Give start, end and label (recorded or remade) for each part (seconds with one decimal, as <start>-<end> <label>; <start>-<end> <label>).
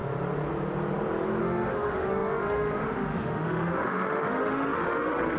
0.0-1.4 recorded; 1.4-5.4 remade